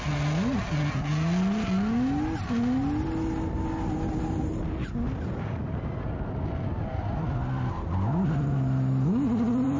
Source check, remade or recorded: recorded